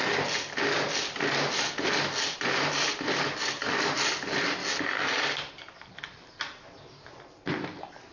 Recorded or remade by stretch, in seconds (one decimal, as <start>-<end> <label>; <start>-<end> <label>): 0.0-8.1 recorded